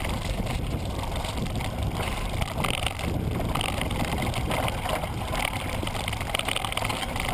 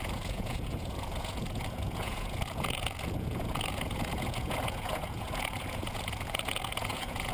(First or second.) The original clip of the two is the first